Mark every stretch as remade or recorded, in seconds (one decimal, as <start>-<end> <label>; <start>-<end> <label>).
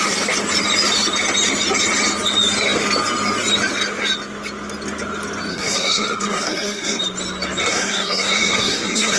0.0-5.5 recorded; 5.5-7.0 remade; 7.0-7.6 recorded; 7.6-9.2 remade